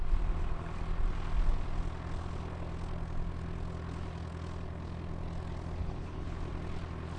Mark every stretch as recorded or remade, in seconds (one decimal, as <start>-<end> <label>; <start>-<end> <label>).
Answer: 0.0-5.8 recorded; 5.8-6.4 remade; 6.4-7.2 recorded